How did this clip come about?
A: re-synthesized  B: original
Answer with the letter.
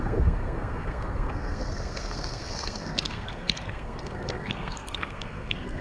A